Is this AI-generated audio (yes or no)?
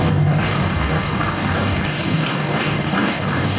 yes